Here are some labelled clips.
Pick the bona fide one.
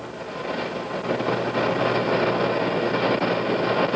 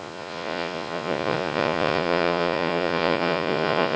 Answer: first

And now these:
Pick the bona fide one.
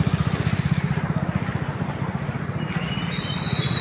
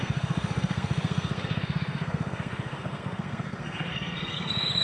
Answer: first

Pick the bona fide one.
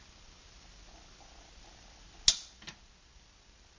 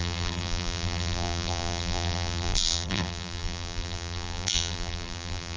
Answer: first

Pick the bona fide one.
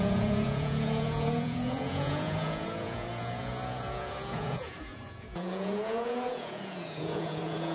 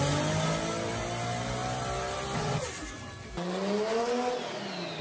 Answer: second